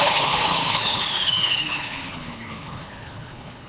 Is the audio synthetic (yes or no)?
yes